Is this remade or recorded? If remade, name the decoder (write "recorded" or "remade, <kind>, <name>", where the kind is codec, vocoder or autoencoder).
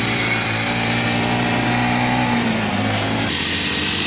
remade, vocoder, BigVGAN v2